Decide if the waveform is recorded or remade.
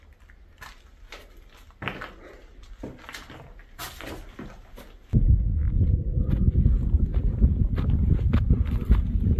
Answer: recorded